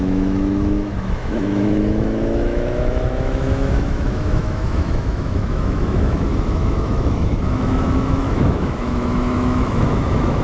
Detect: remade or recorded remade